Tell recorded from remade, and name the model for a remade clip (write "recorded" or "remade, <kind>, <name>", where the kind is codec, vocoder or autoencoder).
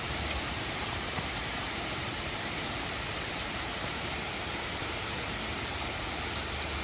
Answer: remade, vocoder, BigVGAN v2